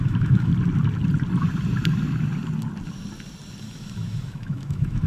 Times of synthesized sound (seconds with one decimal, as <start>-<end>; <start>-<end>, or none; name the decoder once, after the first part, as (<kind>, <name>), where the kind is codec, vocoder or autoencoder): 0.0-0.5 (autoencoder, DAC-VAE); 3.6-5.1